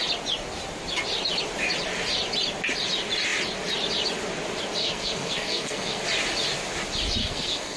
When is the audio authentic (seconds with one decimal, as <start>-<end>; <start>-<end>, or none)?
0.0-4.8; 6.0-7.2